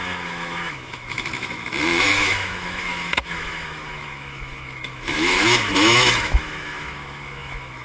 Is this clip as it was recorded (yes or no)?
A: no